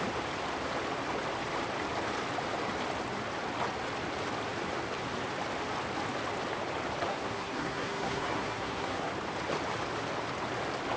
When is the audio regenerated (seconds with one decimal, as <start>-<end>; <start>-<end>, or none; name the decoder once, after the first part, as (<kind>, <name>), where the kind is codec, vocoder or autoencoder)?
7.1-9.1 (codec, SNAC)